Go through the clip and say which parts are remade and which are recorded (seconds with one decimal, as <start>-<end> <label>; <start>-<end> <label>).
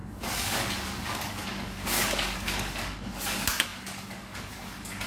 0.0-5.1 remade